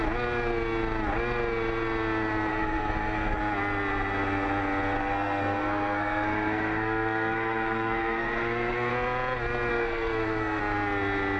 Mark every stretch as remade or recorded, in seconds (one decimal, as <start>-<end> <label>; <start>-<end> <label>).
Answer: 0.0-2.5 recorded; 2.5-3.4 remade; 3.4-5.0 recorded; 5.0-8.9 remade; 8.9-9.7 recorded; 9.7-10.6 remade; 10.6-11.4 recorded

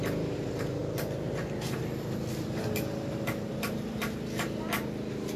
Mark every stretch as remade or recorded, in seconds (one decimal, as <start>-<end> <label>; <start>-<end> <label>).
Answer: 0.0-0.8 recorded; 0.8-4.0 remade; 4.0-5.4 recorded